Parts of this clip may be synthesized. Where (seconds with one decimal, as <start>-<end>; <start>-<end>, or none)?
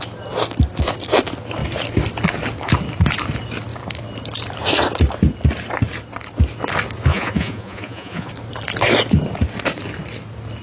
7.1-8.3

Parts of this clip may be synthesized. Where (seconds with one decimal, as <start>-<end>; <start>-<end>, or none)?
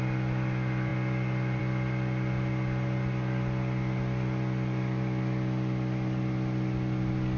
none